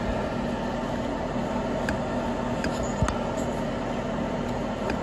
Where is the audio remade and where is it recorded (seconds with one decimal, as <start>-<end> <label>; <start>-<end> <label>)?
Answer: 0.0-5.0 recorded